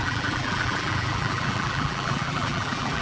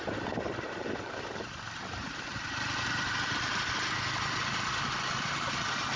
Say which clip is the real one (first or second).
second